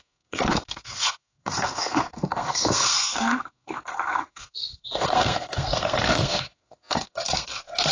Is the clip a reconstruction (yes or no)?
yes